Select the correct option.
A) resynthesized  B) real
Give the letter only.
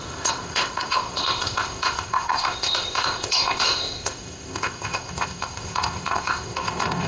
A